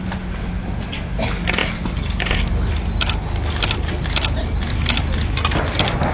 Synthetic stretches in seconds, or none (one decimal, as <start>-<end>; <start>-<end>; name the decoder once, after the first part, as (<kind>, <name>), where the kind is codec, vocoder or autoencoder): none